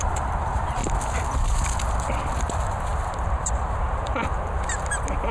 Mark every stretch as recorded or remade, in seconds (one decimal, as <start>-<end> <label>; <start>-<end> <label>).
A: 0.0-0.8 remade; 0.8-2.5 recorded; 2.5-4.2 remade; 4.2-5.3 recorded